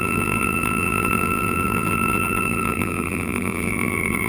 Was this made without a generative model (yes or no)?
no